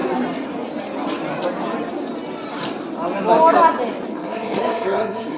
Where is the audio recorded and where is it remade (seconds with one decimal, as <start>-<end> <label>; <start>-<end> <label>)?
0.0-4.1 recorded; 4.1-5.4 remade